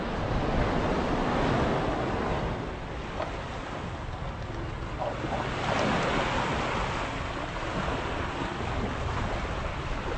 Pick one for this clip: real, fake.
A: real